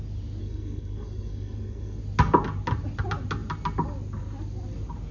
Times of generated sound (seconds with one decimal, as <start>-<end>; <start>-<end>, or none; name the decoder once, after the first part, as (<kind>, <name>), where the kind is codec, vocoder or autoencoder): 0.4-2.0 (codec, SNAC)